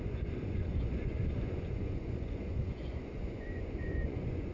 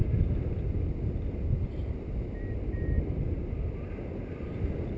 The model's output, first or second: first